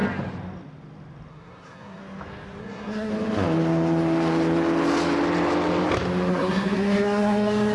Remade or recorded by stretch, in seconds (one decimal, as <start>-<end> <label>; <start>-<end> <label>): 0.0-1.3 recorded; 1.3-2.0 remade; 2.0-2.6 recorded; 2.6-3.1 remade; 3.1-6.3 recorded; 6.3-7.7 remade